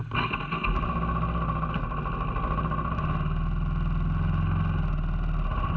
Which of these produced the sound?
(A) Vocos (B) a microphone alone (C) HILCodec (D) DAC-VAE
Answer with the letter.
B